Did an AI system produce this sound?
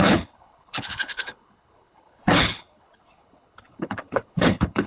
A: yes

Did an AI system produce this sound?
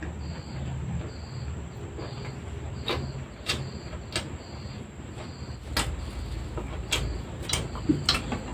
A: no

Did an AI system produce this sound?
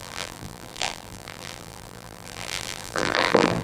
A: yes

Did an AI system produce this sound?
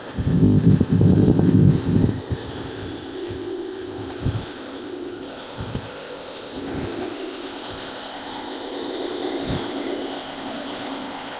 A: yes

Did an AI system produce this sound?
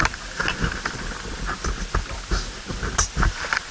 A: no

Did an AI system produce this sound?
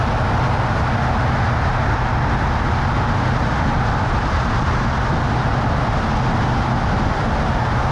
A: no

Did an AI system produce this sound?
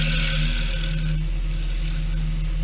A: no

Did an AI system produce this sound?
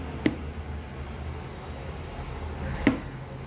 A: no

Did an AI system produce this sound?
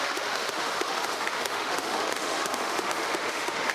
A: yes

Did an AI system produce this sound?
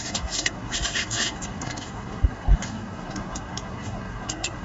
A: yes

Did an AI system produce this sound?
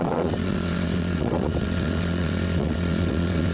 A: yes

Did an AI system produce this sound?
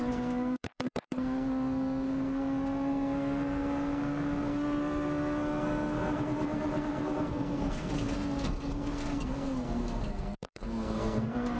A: yes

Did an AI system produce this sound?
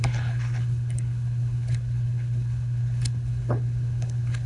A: yes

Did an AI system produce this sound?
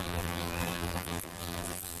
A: yes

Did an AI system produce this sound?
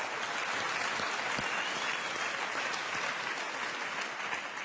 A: no